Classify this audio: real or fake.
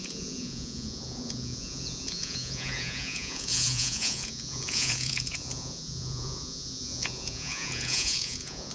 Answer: fake